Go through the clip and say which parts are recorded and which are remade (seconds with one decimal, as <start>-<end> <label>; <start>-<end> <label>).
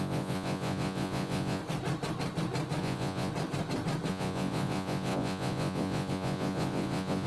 0.0-1.6 remade; 1.6-2.8 recorded; 2.8-3.3 remade; 3.3-4.1 recorded; 4.1-7.3 remade